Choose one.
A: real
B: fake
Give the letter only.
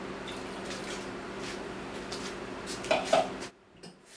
A